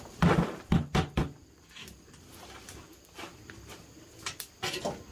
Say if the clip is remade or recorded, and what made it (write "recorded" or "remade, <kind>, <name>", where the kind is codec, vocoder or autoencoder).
remade, vocoder, BigVGAN v2